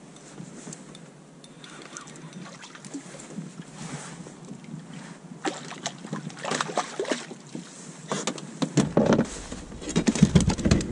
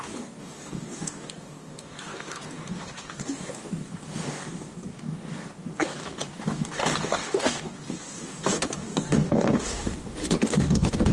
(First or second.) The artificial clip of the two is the second